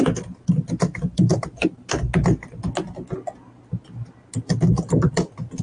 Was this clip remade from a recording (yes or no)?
no